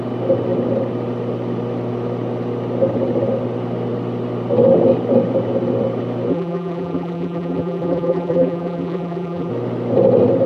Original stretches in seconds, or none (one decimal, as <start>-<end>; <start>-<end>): 0.0-6.3; 9.5-10.5